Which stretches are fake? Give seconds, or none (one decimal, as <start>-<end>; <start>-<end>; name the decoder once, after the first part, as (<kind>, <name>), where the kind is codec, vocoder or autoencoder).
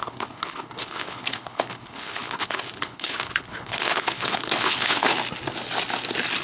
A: 0.0-5.1 (codec, HILCodec)